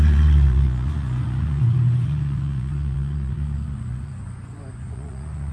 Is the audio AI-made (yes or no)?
yes